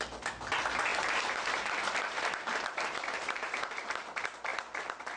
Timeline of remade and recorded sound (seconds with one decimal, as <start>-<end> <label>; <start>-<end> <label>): 0.0-0.9 recorded; 0.9-4.0 remade; 4.0-5.2 recorded

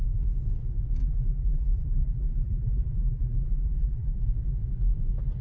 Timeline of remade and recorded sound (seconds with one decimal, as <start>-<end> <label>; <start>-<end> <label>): 0.0-1.0 recorded; 1.0-4.2 remade; 4.2-5.4 recorded

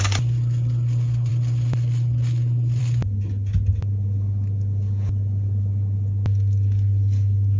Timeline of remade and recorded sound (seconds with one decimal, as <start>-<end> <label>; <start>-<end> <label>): 0.0-7.6 recorded

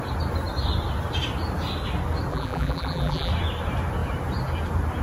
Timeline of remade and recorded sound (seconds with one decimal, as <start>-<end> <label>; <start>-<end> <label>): 0.0-2.3 recorded; 2.3-3.3 remade; 3.3-5.0 recorded